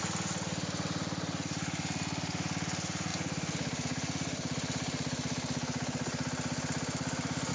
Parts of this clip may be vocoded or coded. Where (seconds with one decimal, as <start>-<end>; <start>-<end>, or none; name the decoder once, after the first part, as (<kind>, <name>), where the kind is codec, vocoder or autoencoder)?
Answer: none